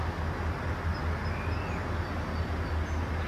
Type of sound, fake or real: real